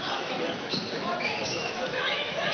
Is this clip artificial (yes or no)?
yes